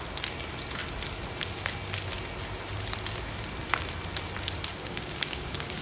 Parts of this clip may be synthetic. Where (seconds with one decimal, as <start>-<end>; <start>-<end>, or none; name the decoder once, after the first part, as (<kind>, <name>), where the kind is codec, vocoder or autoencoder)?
4.7-5.8 (codec, DAC)